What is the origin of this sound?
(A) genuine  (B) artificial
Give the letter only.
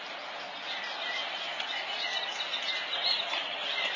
A